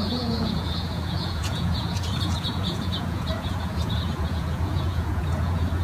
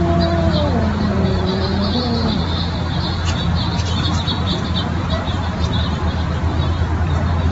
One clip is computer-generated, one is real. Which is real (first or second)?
second